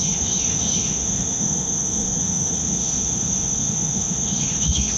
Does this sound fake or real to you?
fake